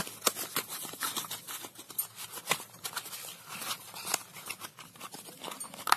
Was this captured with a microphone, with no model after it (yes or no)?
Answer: yes